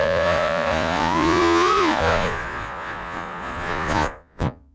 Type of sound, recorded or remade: remade